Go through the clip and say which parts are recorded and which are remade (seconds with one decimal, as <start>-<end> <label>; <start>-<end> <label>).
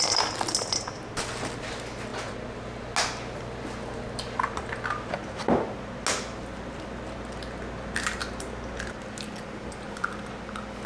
0.0-10.9 recorded